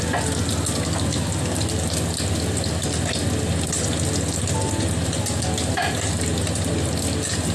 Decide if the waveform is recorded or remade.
recorded